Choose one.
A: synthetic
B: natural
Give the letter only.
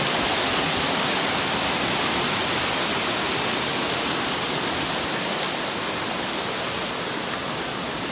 B